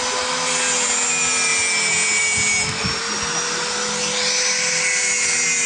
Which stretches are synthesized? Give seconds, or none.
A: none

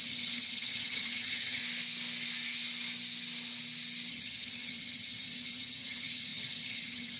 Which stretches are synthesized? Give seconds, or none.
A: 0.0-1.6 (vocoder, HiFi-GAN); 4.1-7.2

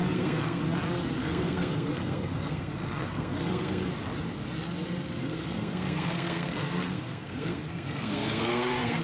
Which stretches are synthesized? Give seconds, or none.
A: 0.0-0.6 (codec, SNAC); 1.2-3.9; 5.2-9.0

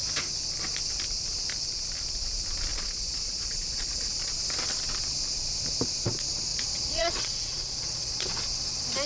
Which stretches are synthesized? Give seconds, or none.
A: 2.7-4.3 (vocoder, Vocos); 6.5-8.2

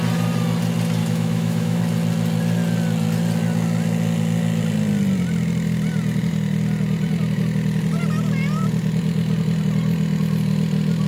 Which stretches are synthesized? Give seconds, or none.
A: 1.0-1.8 (autoencoder, DAC-VAE)

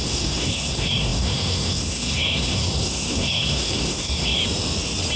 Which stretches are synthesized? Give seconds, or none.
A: 0.0-4.4 (codec, SNAC)

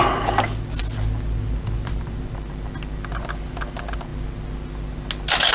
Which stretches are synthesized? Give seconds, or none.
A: none